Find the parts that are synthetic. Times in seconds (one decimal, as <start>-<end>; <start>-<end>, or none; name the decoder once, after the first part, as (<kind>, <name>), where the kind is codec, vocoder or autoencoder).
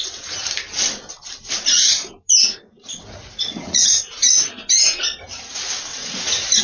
2.6-3.9 (vocoder, Vocos); 5.9-6.6